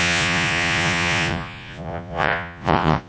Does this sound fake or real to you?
fake